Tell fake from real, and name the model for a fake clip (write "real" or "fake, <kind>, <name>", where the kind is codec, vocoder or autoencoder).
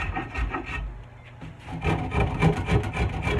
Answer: real